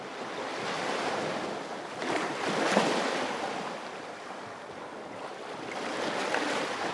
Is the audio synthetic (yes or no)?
no